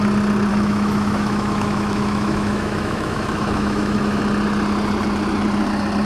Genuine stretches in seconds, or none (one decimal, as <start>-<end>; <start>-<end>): 0.0-0.5; 4.2-6.1